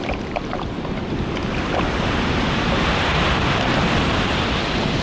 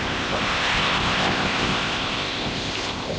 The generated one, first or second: second